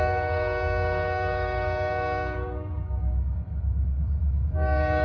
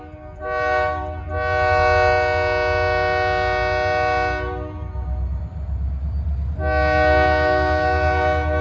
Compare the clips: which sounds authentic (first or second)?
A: second